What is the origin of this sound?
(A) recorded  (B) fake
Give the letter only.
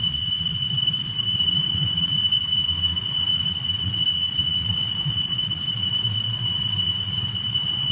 B